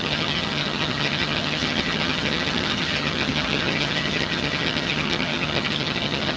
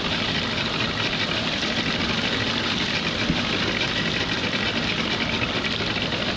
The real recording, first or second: second